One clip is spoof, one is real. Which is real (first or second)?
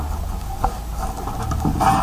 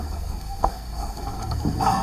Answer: first